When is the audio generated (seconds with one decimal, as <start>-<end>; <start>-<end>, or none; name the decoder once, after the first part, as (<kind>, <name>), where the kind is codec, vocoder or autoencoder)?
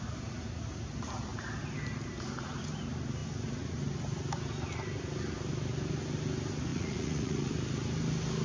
6.7-7.5 (vocoder, Vocos)